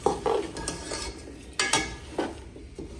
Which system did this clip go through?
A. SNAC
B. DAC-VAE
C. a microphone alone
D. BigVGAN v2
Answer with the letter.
C